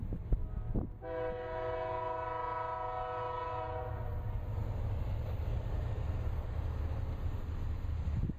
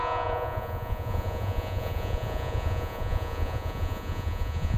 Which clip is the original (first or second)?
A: first